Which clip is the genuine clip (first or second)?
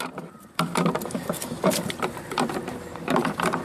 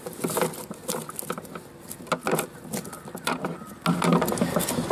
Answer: second